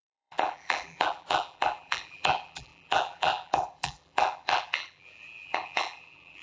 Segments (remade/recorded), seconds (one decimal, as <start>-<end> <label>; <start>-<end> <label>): 0.0-6.4 remade